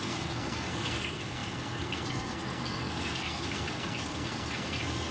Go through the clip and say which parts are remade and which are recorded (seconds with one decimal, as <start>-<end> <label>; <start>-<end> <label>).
0.0-5.1 remade